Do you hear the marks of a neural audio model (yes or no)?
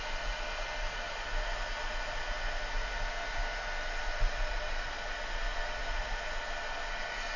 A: no